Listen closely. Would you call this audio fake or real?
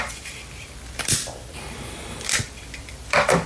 fake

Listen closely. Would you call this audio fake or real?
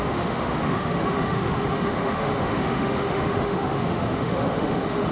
fake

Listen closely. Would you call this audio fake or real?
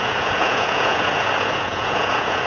fake